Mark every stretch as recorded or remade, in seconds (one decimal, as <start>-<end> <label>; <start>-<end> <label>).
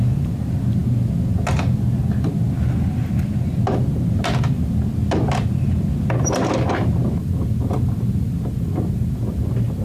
0.0-9.8 recorded